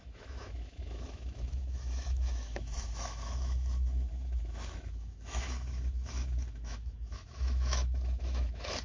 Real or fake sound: fake